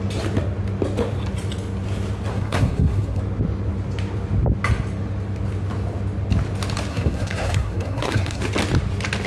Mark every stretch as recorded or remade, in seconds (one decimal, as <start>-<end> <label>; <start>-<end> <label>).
0.0-2.3 recorded; 2.3-3.2 remade; 3.2-6.9 recorded; 6.9-8.4 remade; 8.4-9.3 recorded